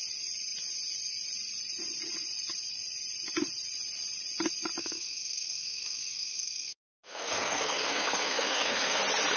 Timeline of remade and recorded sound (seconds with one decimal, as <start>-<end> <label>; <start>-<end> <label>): 0.0-4.8 recorded; 4.8-9.0 remade; 9.0-9.4 recorded